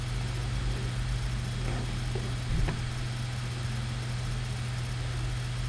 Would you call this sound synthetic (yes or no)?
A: no